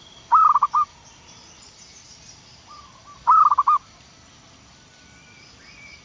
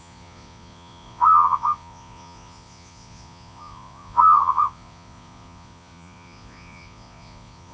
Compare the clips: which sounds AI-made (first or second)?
second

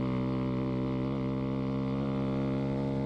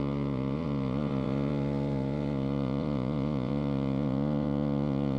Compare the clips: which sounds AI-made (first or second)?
second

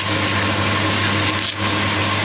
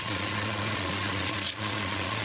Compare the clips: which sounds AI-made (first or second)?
second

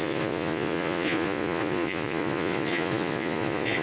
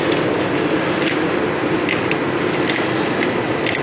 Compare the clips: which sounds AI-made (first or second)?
first